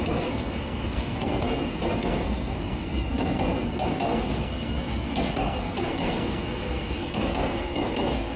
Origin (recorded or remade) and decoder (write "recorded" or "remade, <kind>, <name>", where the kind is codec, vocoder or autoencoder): remade, codec, SNAC